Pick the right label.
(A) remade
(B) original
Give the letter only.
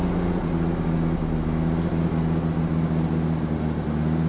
B